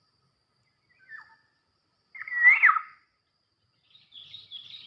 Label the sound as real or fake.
real